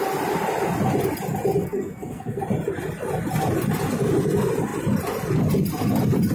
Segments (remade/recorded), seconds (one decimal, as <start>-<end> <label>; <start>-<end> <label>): 0.0-1.6 recorded; 1.6-2.4 remade; 2.4-6.3 recorded